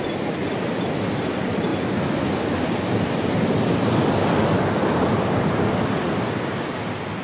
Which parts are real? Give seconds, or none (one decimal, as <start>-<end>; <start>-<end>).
0.0-7.2